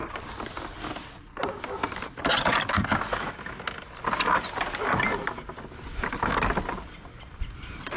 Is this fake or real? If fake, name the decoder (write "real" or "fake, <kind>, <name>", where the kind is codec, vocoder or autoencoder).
real